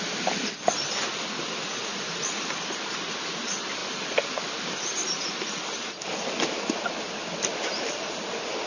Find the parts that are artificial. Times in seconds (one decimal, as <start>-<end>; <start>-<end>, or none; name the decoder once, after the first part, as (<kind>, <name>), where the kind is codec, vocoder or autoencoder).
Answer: none